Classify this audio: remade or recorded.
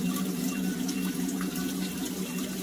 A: recorded